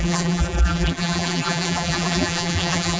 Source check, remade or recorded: remade